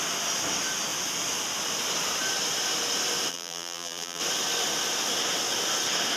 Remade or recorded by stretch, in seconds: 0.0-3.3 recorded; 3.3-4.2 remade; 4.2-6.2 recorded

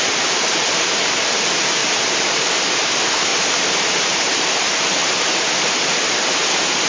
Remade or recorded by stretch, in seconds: 0.0-1.8 recorded; 1.8-2.4 remade; 2.4-3.3 recorded; 3.3-4.4 remade; 4.4-5.0 recorded; 5.0-5.9 remade; 5.9-6.9 recorded

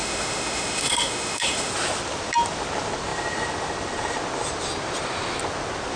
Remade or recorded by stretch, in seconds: 0.0-1.7 remade; 1.7-6.0 recorded

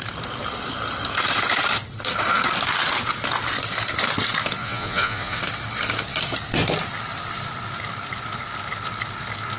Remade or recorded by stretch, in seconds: 0.0-4.6 recorded; 4.6-5.4 remade; 5.4-9.6 recorded